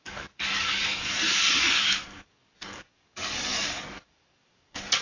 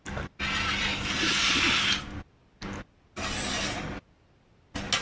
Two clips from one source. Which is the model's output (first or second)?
first